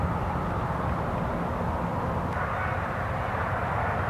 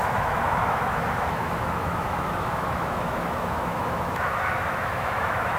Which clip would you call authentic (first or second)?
first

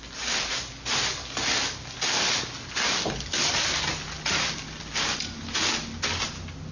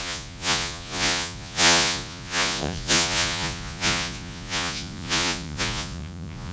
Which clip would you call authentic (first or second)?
first